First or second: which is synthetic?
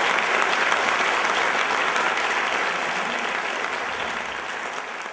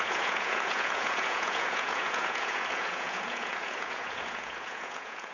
second